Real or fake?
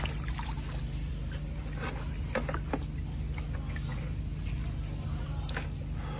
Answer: real